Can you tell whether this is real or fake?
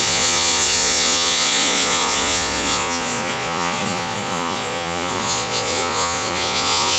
fake